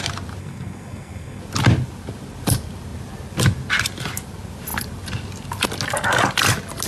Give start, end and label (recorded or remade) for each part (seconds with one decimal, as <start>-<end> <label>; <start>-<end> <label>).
0.0-0.4 recorded; 0.4-1.4 remade; 1.4-6.9 recorded

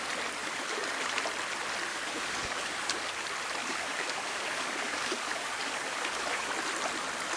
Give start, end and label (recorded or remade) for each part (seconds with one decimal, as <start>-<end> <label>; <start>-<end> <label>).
0.0-0.4 recorded; 0.4-0.9 remade; 0.9-1.9 recorded; 1.9-3.1 remade; 3.1-3.6 recorded; 3.6-6.5 remade; 6.5-7.4 recorded

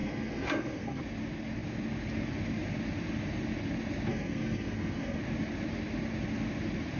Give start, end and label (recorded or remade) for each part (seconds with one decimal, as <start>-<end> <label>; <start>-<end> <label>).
0.0-1.0 remade; 1.0-4.1 recorded; 4.1-5.2 remade; 5.2-7.0 recorded

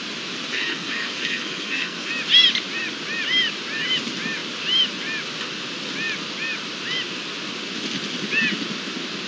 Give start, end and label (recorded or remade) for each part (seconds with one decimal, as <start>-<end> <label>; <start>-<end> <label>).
0.0-0.5 recorded; 0.5-2.1 remade; 2.1-9.3 recorded

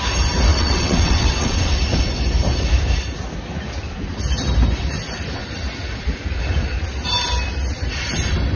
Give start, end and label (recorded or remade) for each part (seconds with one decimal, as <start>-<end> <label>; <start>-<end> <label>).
0.0-0.5 recorded; 0.5-1.8 remade; 1.8-8.6 recorded

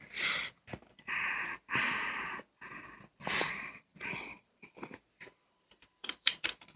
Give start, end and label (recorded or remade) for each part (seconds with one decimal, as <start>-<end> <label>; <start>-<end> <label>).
0.0-0.7 remade; 0.7-3.4 recorded; 3.4-6.8 remade

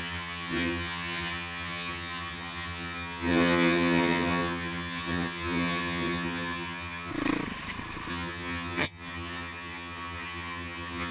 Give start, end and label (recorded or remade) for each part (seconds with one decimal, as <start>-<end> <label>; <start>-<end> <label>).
0.0-7.1 remade; 7.1-8.1 recorded; 8.1-11.1 remade

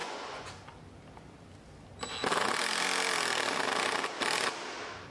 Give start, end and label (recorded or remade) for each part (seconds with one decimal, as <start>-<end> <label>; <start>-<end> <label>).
0.0-0.5 remade; 0.5-5.1 recorded